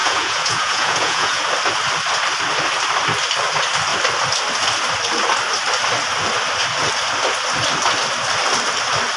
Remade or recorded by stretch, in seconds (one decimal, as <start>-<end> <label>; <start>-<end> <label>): 0.0-1.4 remade; 1.4-9.2 recorded